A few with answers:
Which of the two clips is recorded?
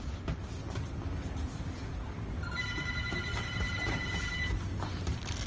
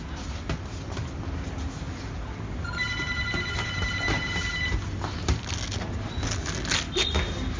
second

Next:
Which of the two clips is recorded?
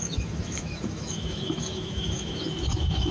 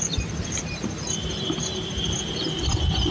second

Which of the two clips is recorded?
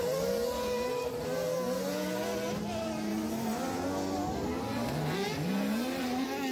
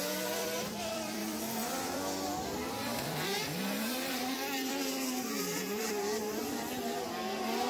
first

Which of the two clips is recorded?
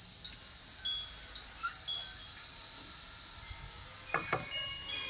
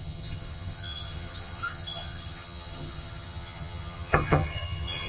first